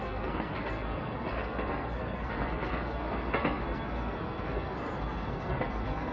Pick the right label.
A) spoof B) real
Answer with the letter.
A